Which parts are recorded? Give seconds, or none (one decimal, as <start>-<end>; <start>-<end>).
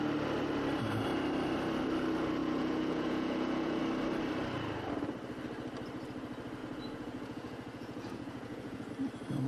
0.0-2.4; 3.8-6.6; 8.9-9.5